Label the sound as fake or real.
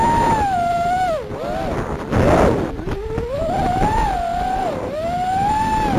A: real